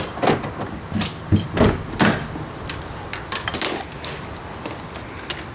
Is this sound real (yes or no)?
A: yes